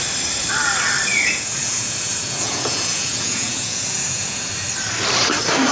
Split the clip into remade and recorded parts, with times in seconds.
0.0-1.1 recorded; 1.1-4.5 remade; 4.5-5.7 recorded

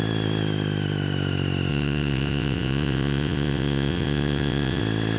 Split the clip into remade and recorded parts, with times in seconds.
0.0-1.7 recorded; 1.7-4.8 remade; 4.8-5.2 recorded

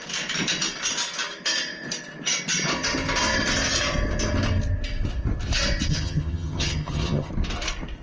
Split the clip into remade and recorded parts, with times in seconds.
0.0-5.9 recorded; 5.9-7.3 remade; 7.3-8.0 recorded

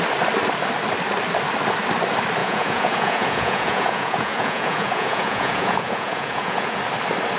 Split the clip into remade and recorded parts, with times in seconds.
0.0-2.4 recorded; 2.4-6.8 remade; 6.8-7.4 recorded

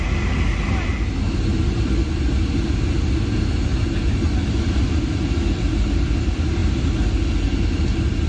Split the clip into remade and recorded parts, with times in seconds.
0.0-8.3 recorded

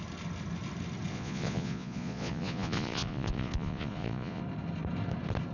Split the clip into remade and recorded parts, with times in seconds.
0.0-1.1 recorded; 1.1-4.4 remade; 4.4-5.5 recorded

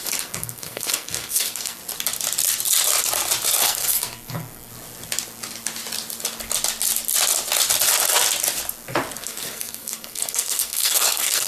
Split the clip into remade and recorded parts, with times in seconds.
0.0-1.8 remade; 1.8-3.6 recorded; 3.6-4.7 remade; 4.7-9.2 recorded; 9.2-11.5 remade

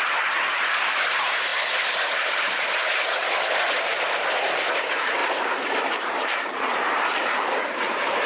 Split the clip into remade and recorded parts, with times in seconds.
0.0-3.9 remade; 3.9-4.7 recorded; 4.7-5.2 remade; 5.2-5.8 recorded; 5.8-8.3 remade